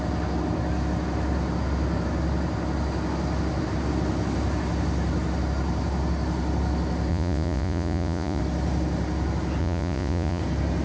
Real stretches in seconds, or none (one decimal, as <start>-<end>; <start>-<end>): 0.0-7.1; 8.4-9.6; 10.4-10.8

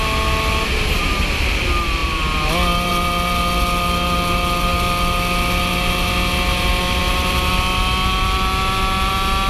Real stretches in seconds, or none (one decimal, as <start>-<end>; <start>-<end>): 0.0-9.5